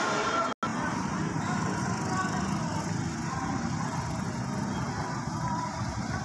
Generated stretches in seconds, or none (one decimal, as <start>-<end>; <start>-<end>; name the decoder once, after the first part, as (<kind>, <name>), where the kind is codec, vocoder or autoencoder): none